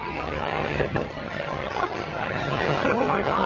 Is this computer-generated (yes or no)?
yes